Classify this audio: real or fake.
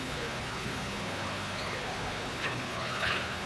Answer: fake